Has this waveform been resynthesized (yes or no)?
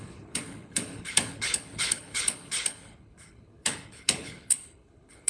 yes